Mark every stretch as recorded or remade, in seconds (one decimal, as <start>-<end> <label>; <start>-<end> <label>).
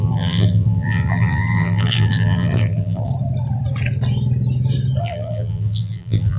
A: 0.0-3.1 remade; 3.1-5.0 recorded; 5.0-6.4 remade